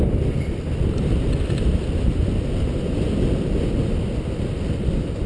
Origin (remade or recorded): recorded